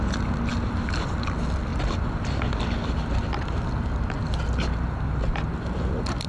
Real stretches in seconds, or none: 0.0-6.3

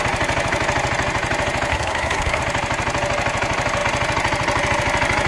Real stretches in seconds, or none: 0.0-1.7; 2.4-5.3